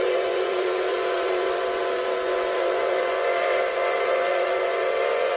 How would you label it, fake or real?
fake